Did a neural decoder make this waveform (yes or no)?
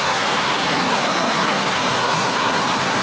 yes